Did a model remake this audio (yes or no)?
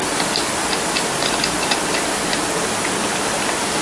no